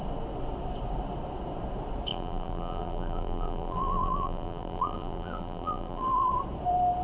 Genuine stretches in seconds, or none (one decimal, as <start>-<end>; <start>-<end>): 0.0-2.1; 6.3-7.0

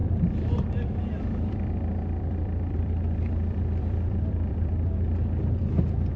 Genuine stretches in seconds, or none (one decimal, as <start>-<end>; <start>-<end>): none

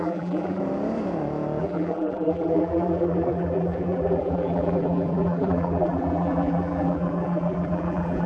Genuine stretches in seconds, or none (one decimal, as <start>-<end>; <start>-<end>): 0.6-1.6

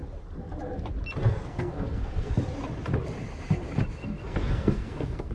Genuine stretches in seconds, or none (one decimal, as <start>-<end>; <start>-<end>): 0.0-1.2; 2.3-4.0

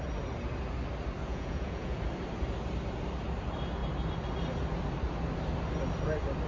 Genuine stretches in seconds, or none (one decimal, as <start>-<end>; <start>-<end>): 0.0-1.2; 2.0-6.5

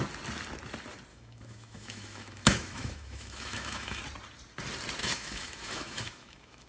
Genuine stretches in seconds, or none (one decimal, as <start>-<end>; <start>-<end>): 0.0-1.1; 4.0-5.0